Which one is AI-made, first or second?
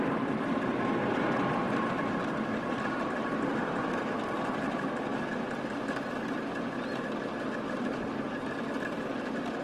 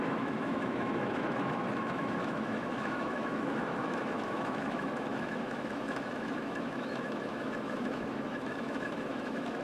second